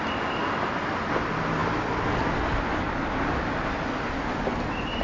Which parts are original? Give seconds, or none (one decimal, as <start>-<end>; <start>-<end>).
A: 0.0-5.0